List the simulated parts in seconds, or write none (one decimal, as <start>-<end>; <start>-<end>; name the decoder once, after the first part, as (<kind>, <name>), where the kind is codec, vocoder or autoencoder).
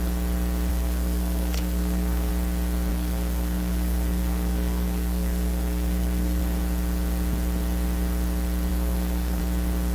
0.7-2.3 (codec, SNAC); 2.9-6.4; 8.7-9.4